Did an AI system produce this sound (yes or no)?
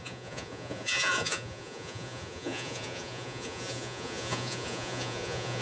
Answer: yes